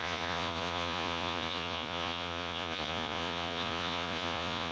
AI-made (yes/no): yes